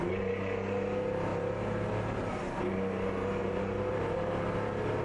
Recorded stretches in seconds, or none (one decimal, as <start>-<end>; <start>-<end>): 0.0-3.4; 4.2-5.0

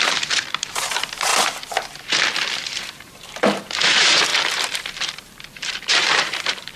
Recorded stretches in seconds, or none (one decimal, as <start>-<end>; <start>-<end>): 1.3-2.8

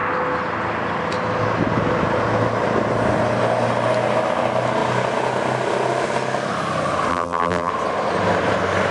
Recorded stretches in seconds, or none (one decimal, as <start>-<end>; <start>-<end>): 0.0-7.1; 7.7-8.9

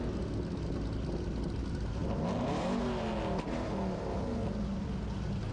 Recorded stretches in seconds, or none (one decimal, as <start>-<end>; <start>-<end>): 0.0-5.5

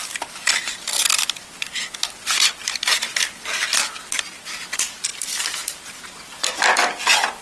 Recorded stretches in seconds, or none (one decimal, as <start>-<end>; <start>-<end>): 0.0-5.1; 6.6-7.4

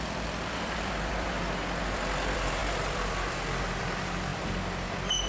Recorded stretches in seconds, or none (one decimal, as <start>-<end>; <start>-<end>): none

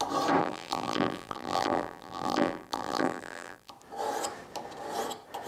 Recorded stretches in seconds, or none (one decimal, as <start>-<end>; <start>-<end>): 0.0-0.4; 3.7-5.5